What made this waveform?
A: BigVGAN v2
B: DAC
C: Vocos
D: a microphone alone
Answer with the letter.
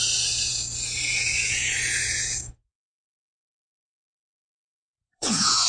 C